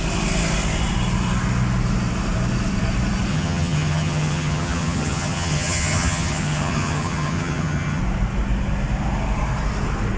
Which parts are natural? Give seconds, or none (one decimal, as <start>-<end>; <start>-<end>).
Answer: 0.0-3.3; 8.0-10.2